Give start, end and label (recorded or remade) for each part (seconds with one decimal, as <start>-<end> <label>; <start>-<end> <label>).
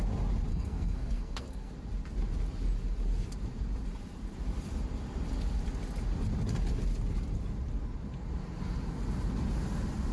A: 0.0-0.5 recorded; 0.5-1.7 remade; 1.7-10.1 recorded